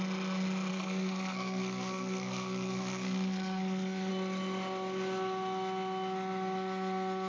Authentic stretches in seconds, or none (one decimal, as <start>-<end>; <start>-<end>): 0.0-0.7; 4.1-7.3